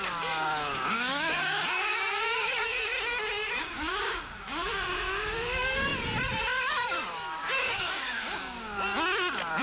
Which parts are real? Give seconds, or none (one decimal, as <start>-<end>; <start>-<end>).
2.9-3.6; 5.9-6.7; 8.8-9.6